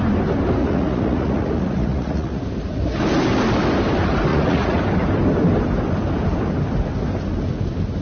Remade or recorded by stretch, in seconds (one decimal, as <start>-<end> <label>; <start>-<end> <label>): 0.0-0.6 recorded; 0.6-2.4 remade; 2.4-4.3 recorded; 4.3-4.8 remade; 4.8-8.0 recorded